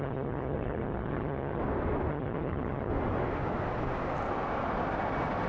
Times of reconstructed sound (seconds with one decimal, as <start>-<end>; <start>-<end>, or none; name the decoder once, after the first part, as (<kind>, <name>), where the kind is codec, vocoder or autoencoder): 0.0-1.6 (vocoder, HiFi-GAN); 2.1-2.9